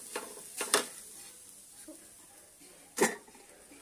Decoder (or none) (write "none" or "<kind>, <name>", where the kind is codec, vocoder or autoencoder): none